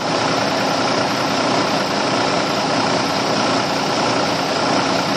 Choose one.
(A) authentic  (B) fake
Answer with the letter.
A